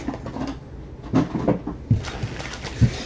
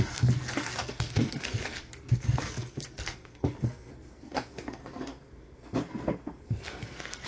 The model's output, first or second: second